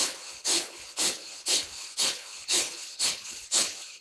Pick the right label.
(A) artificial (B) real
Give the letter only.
A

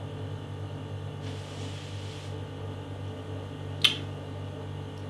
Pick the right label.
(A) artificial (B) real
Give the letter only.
B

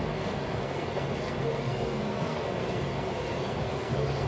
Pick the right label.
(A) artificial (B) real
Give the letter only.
A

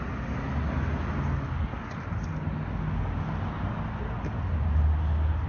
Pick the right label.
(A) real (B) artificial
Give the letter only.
A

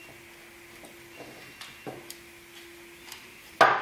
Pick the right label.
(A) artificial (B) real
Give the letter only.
B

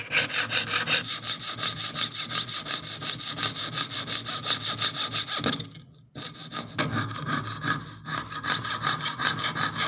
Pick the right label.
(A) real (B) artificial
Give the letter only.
A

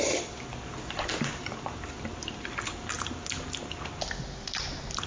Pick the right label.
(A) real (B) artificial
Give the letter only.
A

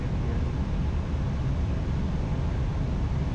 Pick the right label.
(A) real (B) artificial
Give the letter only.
A